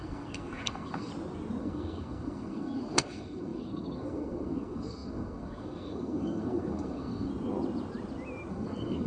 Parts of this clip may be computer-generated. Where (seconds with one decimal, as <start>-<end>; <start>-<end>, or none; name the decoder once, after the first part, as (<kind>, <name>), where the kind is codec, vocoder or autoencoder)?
0.0-1.1 (codec, SNAC); 1.6-7.3; 8.5-9.1